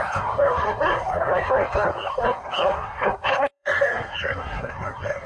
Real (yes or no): no